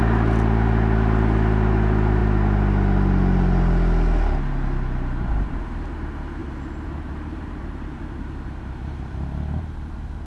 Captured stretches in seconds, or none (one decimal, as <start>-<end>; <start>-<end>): 0.0-6.4